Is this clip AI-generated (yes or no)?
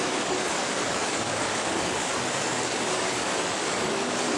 yes